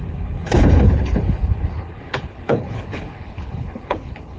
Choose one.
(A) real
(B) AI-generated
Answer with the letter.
B